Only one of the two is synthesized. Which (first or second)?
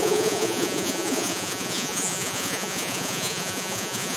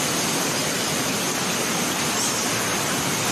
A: first